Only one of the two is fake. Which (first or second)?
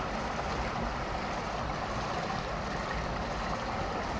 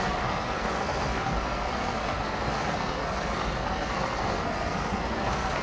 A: second